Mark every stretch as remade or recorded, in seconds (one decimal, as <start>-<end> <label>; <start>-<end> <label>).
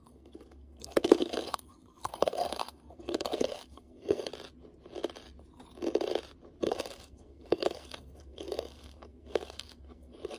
0.0-4.3 remade; 4.3-6.6 recorded; 6.6-10.4 remade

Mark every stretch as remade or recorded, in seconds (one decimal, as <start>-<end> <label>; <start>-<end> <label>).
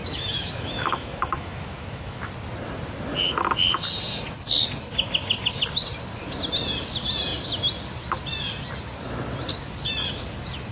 0.0-2.3 remade; 2.3-10.7 recorded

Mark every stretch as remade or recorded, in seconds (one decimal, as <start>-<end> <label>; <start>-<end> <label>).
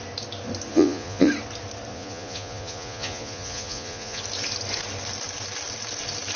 0.0-0.7 recorded; 0.7-1.3 remade; 1.3-1.9 recorded; 1.9-4.2 remade; 4.2-6.4 recorded